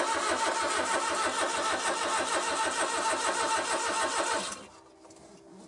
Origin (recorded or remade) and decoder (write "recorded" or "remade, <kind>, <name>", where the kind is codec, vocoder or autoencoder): recorded